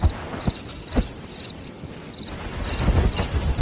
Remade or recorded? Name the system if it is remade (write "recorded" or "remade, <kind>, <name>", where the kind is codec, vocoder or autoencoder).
recorded